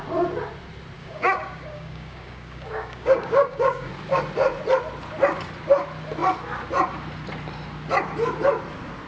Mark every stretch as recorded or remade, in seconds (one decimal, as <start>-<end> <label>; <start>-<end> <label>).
0.0-1.0 recorded; 1.0-3.9 remade; 3.9-9.1 recorded